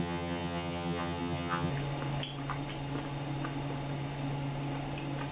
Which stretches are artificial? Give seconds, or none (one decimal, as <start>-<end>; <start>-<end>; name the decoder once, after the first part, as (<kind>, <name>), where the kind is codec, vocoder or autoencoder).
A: 0.0-1.7 (vocoder, HiFi-GAN)

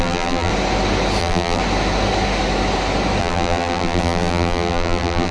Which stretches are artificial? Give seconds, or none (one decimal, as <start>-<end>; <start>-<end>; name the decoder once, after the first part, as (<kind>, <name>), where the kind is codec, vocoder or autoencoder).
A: 0.0-0.5 (vocoder, BigVGAN v2); 1.2-1.6; 3.2-5.3

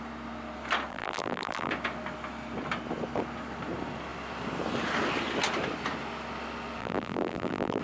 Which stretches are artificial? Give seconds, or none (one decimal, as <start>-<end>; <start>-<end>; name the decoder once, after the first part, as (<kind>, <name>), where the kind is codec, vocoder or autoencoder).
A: 0.9-1.7 (vocoder, BigVGAN v2); 6.8-7.8

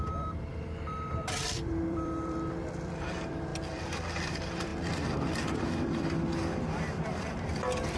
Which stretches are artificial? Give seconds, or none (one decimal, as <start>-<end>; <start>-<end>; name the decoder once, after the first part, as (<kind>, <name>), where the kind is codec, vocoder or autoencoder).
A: 0.0-4.7 (vocoder, BigVGAN v2); 5.6-8.0

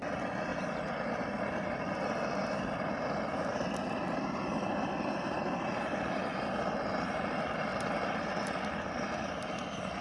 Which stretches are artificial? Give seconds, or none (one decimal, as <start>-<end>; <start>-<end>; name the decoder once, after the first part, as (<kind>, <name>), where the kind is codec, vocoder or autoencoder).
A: 7.7-8.3 (vocoder, BigVGAN v2)

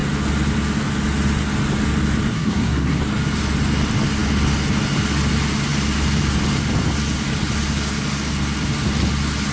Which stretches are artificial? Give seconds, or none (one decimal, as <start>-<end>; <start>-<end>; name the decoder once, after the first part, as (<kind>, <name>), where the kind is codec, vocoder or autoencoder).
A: 2.3-3.0 (codec, SNAC)